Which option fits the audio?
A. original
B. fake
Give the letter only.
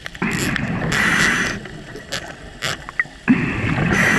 A